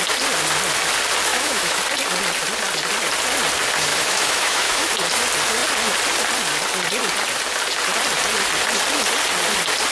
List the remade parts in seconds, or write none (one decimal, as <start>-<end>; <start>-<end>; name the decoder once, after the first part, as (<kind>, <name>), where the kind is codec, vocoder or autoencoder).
1.3-1.8 (autoencoder, DAC-VAE); 3.9-4.9